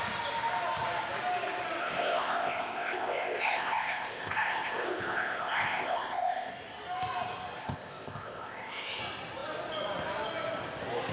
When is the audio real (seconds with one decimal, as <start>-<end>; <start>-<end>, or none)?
0.0-1.8; 6.5-7.6; 9.0-11.1